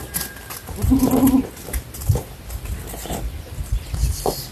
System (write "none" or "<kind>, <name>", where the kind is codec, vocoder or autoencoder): none